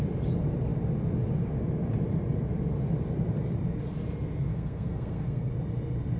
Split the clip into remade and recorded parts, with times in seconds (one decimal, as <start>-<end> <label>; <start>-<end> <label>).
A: 0.0-4.5 recorded; 4.5-5.5 remade; 5.5-6.2 recorded